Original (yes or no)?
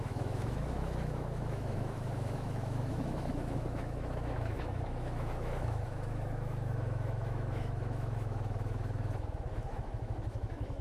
no